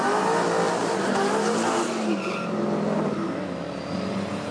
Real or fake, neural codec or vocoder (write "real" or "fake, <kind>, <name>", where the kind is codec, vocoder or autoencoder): real